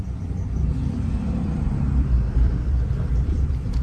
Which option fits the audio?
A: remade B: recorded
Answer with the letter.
A